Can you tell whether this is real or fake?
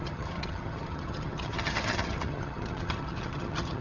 fake